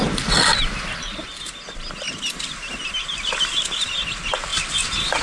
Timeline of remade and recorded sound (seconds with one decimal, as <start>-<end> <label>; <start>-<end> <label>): 0.0-5.2 recorded